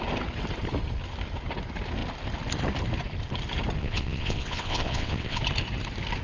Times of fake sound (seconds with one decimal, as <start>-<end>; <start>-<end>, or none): 3.8-5.4